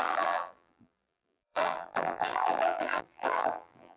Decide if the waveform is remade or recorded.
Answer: remade